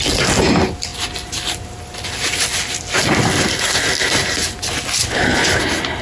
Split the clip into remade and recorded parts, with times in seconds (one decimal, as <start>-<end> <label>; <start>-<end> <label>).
0.0-5.0 recorded; 5.0-5.6 remade; 5.6-6.0 recorded